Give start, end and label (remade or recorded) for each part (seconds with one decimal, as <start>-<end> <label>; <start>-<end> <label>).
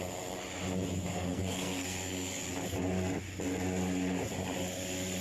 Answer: 0.0-1.1 recorded; 1.1-2.4 remade; 2.4-5.2 recorded